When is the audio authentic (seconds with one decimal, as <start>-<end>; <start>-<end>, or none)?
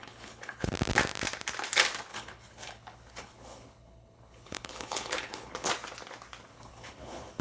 0.7-2.1; 5.7-6.5